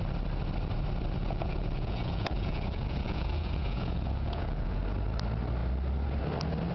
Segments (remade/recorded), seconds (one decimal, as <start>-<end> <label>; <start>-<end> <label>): 0.0-1.2 recorded; 1.2-4.8 remade; 4.8-6.7 recorded